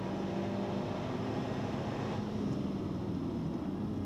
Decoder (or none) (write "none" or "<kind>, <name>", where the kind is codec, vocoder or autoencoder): none